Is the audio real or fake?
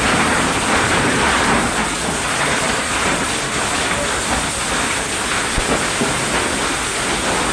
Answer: real